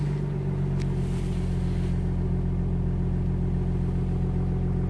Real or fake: real